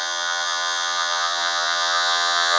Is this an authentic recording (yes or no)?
no